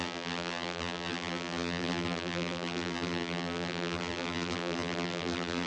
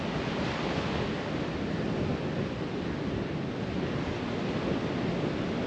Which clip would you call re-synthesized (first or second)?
first